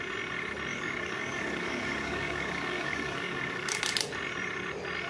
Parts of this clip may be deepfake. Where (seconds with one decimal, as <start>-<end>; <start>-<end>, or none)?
0.7-3.8